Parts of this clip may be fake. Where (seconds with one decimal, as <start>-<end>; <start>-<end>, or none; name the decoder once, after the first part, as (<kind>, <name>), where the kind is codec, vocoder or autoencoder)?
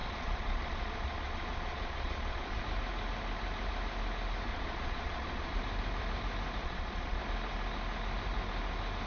0.0-2.6 (vocoder, Vocos); 4.5-5.6; 6.6-7.2